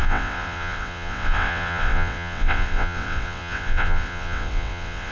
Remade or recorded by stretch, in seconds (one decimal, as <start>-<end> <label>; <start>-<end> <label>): 0.0-5.1 remade